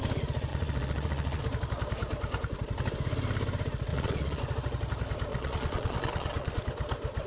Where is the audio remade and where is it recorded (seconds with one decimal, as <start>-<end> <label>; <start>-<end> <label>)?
0.0-0.5 recorded; 0.5-1.4 remade; 1.4-3.9 recorded; 3.9-4.4 remade; 4.4-5.3 recorded; 5.3-6.6 remade; 6.6-7.3 recorded